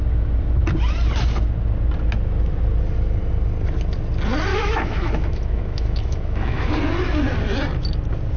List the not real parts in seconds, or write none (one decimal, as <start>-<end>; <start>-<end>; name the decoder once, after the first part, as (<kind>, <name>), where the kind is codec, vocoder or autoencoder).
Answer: 4.5-6.7 (autoencoder, DAC-VAE)